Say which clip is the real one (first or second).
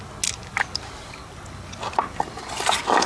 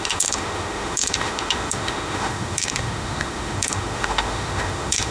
first